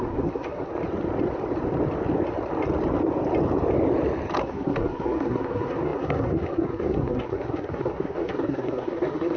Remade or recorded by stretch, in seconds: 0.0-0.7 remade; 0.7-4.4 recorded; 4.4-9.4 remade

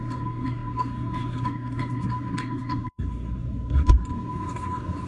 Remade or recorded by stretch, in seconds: 0.0-5.1 remade